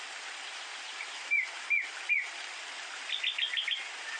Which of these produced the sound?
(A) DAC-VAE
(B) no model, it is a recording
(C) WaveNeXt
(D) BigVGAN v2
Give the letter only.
B